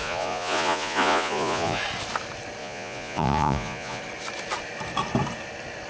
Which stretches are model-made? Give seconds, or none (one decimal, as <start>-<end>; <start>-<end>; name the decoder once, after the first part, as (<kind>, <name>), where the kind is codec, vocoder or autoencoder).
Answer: 0.0-1.8 (vocoder, Vocos); 2.6-4.0